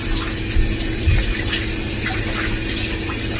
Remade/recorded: recorded